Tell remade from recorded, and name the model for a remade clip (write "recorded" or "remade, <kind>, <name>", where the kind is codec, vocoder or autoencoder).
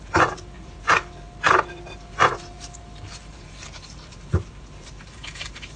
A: remade, vocoder, BigVGAN v2